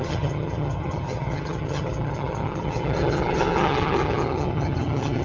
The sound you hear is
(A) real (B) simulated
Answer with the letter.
B